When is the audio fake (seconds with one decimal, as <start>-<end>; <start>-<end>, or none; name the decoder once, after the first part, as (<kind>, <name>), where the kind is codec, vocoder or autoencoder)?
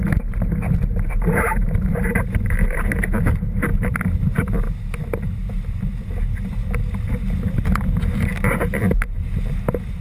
0.0-10.0 (vocoder, BigVGAN v2)